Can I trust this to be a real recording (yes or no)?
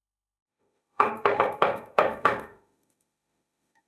no